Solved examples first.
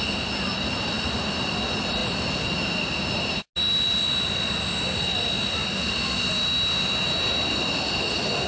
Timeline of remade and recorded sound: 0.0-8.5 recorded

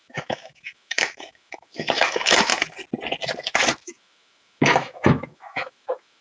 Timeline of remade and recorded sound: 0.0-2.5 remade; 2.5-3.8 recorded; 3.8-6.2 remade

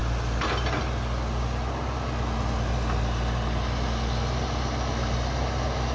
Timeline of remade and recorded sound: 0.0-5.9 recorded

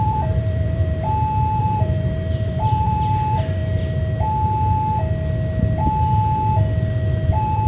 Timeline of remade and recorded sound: 0.0-0.8 remade; 0.8-1.6 recorded; 1.6-3.6 remade; 3.6-7.3 recorded; 7.3-7.7 remade

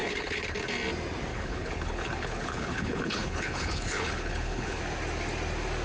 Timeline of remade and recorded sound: 0.0-0.7 remade; 0.7-1.3 recorded; 1.3-4.8 remade; 4.8-5.8 recorded